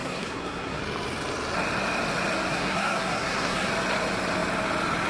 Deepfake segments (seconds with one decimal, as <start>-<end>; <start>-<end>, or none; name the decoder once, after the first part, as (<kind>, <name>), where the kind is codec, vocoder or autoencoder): 0.0-0.8 (codec, SNAC); 2.5-3.7